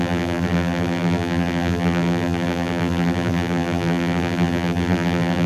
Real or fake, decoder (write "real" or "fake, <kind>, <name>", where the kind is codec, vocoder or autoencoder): fake, vocoder, BigVGAN v2